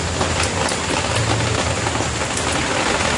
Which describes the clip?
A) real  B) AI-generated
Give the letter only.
A